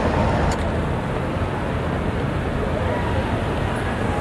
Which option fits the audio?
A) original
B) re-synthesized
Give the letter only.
A